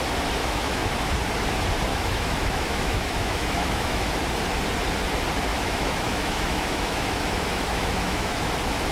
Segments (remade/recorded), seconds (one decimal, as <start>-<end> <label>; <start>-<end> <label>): 0.0-0.4 recorded; 0.4-0.9 remade; 0.9-1.9 recorded; 1.9-4.1 remade; 4.1-5.5 recorded; 5.5-8.5 remade; 8.5-8.9 recorded